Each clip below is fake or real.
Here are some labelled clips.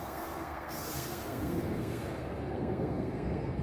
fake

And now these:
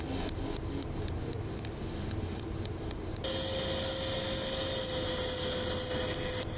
real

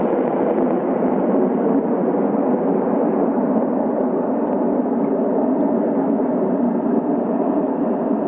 fake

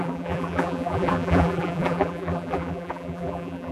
fake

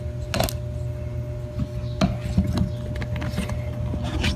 real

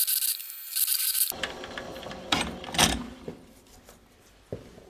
real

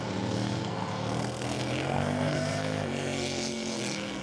fake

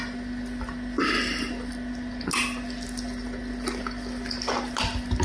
real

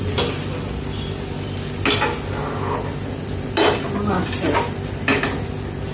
real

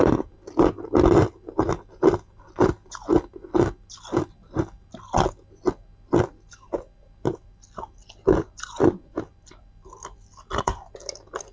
real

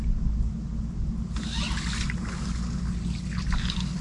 real